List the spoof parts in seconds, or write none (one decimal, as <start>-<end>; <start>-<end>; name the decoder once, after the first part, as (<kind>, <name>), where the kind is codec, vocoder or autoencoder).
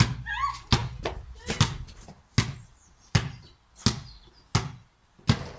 none